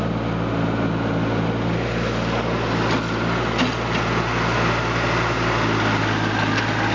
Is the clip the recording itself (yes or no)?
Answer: yes